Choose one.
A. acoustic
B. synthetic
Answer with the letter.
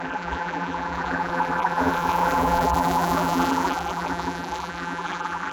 B